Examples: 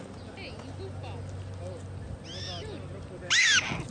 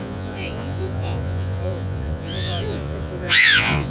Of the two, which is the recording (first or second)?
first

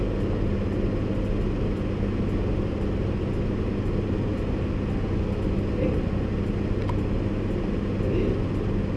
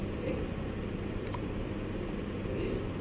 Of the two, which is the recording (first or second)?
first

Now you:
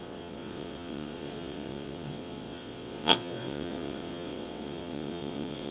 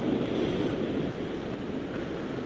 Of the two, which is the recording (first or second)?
second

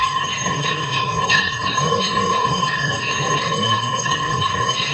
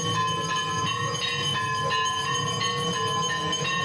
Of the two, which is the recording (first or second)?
second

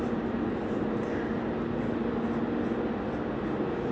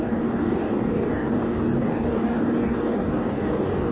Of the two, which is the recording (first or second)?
first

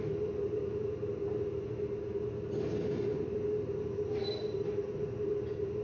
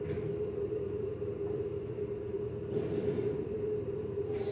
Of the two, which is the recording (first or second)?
first